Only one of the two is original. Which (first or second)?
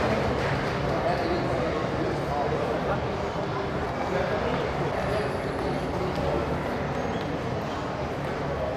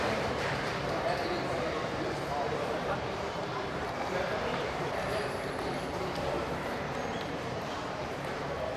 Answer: first